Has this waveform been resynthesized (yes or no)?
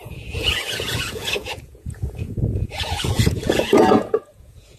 yes